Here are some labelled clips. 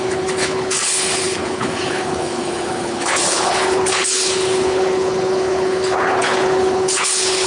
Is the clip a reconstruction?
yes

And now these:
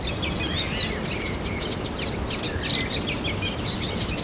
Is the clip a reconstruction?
no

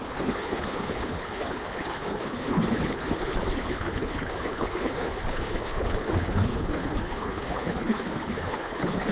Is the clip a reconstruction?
yes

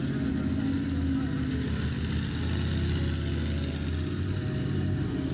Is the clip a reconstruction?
no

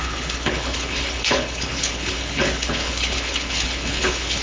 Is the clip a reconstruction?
yes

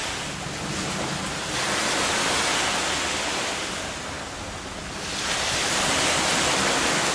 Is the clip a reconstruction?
no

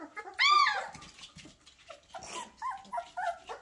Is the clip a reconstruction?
no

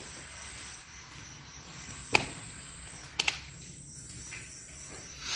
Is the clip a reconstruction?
no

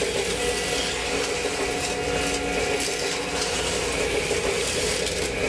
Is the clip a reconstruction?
no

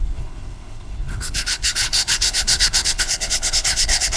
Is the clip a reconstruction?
yes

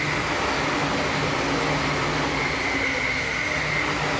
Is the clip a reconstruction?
no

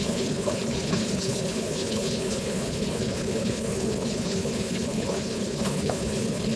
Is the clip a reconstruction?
yes